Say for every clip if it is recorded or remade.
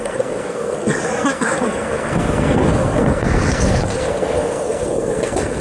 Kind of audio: remade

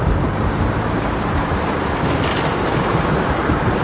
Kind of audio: remade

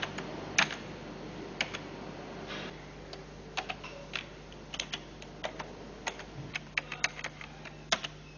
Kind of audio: recorded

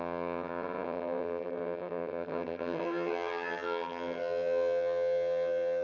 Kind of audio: remade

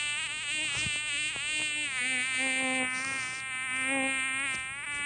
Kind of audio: recorded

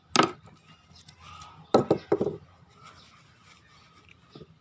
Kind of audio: recorded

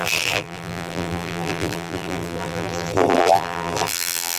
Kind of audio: remade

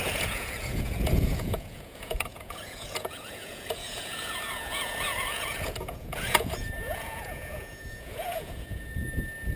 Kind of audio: remade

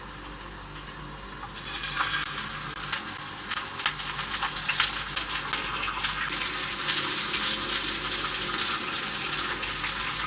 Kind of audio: recorded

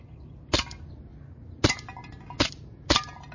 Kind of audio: recorded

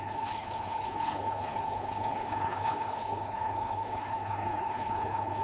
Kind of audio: remade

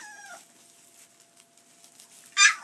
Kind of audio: recorded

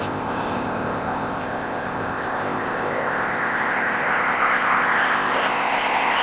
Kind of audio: remade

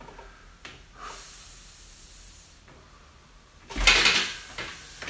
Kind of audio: recorded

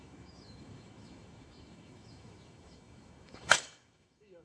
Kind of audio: remade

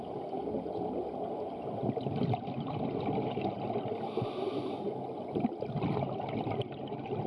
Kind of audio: recorded